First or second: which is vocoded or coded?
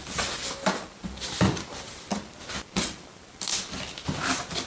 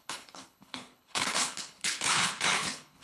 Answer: second